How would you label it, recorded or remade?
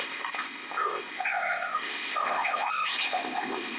remade